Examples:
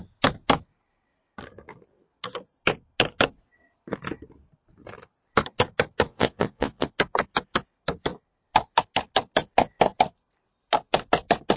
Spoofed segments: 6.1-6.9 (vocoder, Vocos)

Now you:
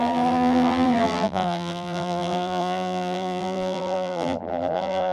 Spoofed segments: 0.0-5.1 (vocoder, BigVGAN v2)

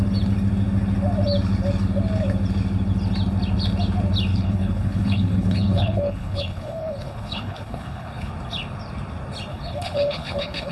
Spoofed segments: 4.3-8.3 (codec, HILCodec); 9.5-10.7

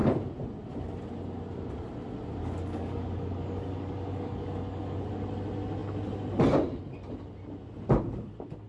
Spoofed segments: 2.4-5.1 (codec, DAC)

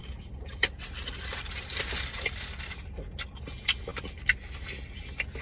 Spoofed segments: none